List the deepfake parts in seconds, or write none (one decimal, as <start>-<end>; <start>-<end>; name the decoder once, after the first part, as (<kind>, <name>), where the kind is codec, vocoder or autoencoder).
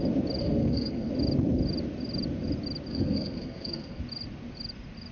0.4-1.1 (codec, SNAC); 2.9-4.0